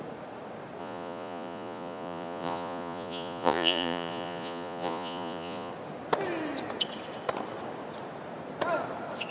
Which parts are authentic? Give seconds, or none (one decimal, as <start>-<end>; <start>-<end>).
0.0-0.8; 5.7-9.3